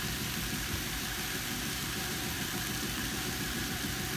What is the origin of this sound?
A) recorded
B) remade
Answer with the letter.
B